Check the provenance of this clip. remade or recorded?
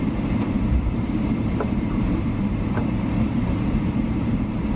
remade